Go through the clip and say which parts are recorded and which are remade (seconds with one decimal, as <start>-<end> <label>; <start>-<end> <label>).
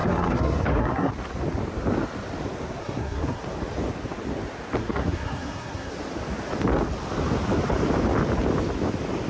0.0-1.1 remade; 1.1-2.8 recorded; 2.8-3.4 remade; 3.4-4.8 recorded; 4.8-5.9 remade; 5.9-9.3 recorded